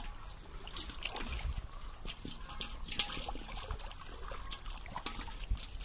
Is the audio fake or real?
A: real